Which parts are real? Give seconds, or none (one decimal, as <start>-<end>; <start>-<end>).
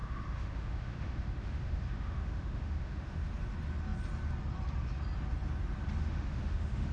3.2-6.0